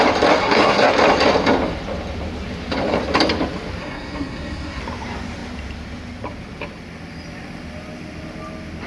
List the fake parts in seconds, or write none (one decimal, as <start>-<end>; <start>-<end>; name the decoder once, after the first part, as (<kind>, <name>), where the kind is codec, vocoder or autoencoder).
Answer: 0.4-0.9 (codec, SNAC); 3.8-4.8